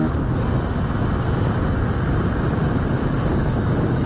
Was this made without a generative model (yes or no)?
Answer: yes